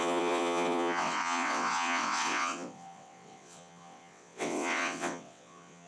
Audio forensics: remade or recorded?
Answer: remade